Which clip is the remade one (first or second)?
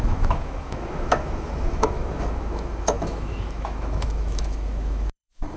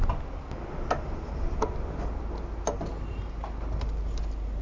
first